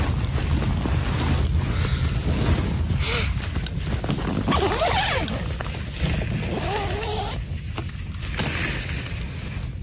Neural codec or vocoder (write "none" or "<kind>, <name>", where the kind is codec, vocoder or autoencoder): none